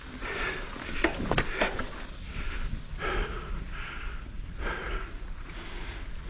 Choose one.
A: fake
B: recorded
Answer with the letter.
B